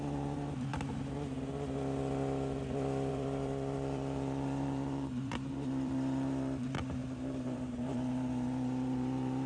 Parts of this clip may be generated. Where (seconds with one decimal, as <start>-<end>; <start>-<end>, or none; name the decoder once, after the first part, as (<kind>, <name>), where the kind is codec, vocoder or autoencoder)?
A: 0.0-0.7 (vocoder, BigVGAN v2); 3.1-9.5